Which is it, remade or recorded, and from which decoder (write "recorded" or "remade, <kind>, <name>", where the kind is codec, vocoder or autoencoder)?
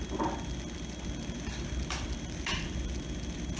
recorded